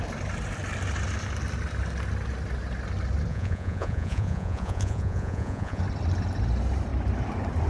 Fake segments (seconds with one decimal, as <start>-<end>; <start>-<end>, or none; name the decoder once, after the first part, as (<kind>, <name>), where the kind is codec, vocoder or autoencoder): 3.3-5.8 (vocoder, Vocos)